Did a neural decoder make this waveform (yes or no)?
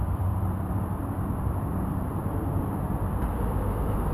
yes